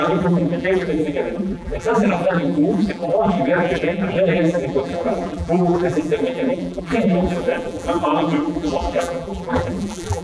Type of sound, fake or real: fake